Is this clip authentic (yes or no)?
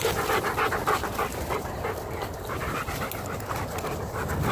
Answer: yes